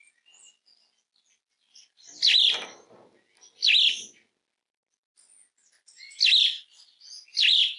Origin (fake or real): real